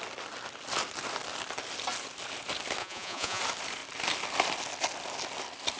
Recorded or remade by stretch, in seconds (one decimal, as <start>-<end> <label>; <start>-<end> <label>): 0.0-2.8 recorded; 2.8-3.4 remade; 3.4-5.8 recorded

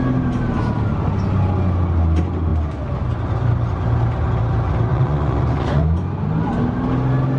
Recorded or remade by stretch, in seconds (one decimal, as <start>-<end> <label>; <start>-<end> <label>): 0.0-4.9 recorded; 4.9-5.8 remade; 5.8-7.4 recorded

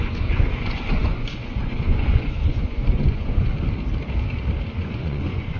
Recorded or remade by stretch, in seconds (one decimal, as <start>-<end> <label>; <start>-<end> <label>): 0.0-3.5 remade; 3.5-4.8 recorded; 4.8-5.6 remade

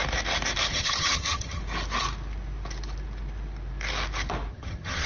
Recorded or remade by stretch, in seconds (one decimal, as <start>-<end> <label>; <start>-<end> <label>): 0.0-0.7 recorded; 0.7-1.6 remade; 1.6-4.5 recorded; 4.5-5.1 remade

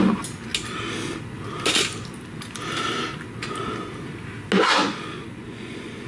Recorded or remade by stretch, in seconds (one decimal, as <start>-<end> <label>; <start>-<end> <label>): 0.0-4.8 recorded; 4.8-6.1 remade

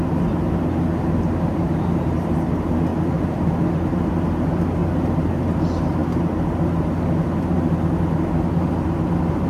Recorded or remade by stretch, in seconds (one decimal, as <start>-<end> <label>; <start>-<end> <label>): 0.0-4.8 recorded; 4.8-5.6 remade; 5.6-9.5 recorded

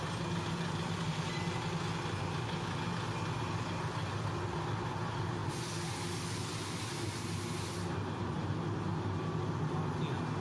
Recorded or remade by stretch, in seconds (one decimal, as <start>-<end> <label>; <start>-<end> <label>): 0.0-10.4 recorded